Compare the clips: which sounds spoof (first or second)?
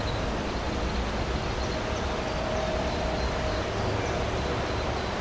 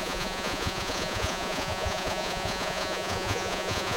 second